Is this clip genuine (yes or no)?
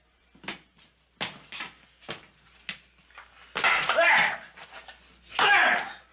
yes